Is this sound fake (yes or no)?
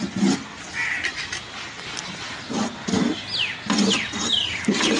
no